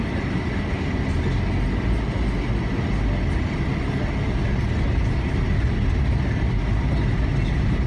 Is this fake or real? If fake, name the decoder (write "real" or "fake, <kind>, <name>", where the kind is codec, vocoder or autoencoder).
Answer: real